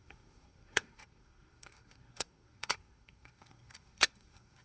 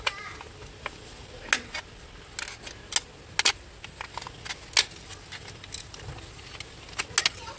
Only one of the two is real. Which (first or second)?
second